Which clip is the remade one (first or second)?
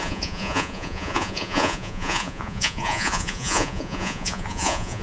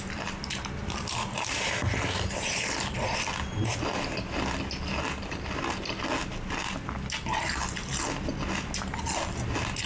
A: first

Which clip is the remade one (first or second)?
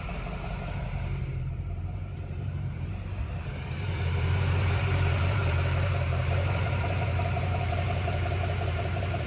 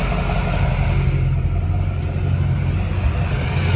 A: first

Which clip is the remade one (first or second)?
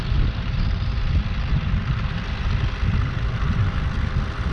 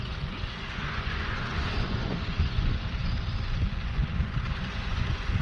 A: second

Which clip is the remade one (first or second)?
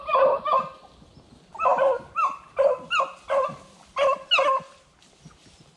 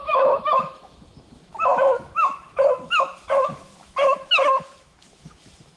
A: second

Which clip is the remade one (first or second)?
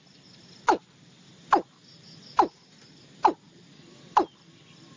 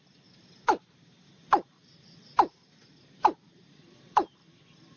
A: second